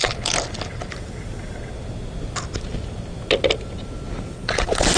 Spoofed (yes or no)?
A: no